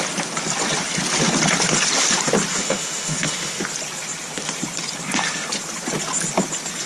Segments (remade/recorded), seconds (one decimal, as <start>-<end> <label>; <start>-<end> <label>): 0.0-2.5 recorded; 2.5-3.6 remade; 3.6-6.9 recorded